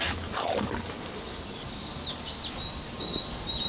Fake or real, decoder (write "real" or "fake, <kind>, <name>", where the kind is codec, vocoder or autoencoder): real